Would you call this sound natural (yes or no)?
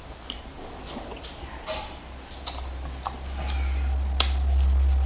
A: yes